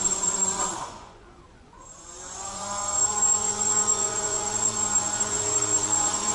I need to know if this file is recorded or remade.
remade